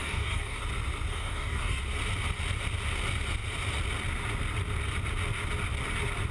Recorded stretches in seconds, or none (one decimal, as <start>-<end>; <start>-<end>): 0.6-1.1; 1.8-6.3